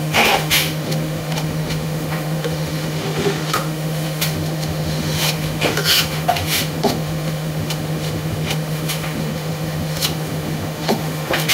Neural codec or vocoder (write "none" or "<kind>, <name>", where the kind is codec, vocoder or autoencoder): autoencoder, DAC-VAE